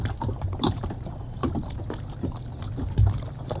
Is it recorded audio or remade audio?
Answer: recorded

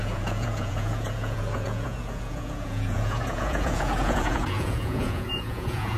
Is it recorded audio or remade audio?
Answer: remade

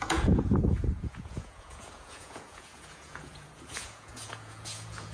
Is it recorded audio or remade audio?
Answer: remade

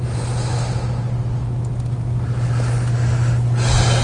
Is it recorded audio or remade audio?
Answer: recorded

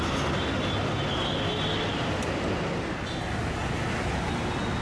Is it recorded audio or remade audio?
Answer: recorded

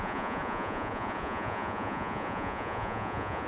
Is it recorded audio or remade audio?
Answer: remade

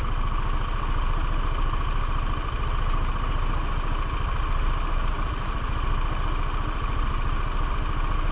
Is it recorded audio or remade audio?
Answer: recorded